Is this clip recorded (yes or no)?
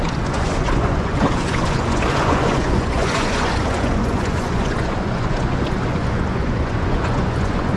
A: no